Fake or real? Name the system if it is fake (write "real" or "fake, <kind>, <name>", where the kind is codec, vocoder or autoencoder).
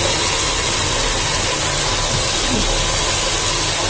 real